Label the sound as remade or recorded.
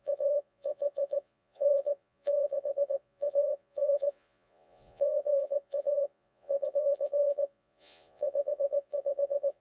remade